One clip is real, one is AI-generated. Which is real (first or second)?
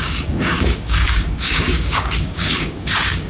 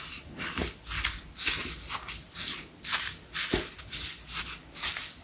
second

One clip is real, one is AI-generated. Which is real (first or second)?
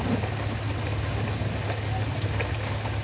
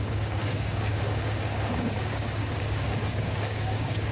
first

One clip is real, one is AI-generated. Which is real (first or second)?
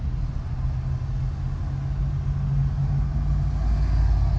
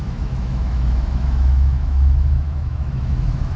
first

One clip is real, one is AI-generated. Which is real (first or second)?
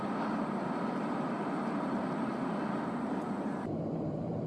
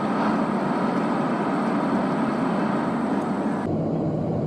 second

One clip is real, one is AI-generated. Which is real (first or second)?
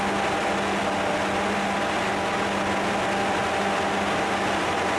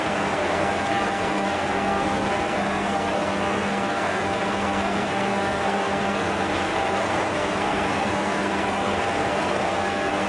first